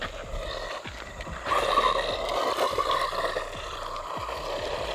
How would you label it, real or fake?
real